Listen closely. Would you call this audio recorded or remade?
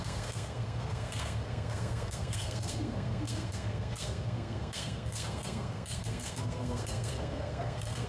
remade